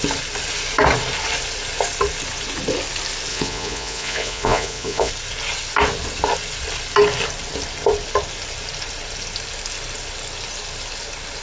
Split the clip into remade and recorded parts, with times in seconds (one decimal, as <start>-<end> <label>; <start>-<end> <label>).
0.0-3.3 recorded; 3.3-5.1 remade; 5.1-11.4 recorded